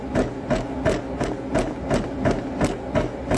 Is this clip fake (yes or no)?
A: no